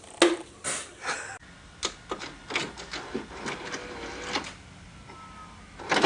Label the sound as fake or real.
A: real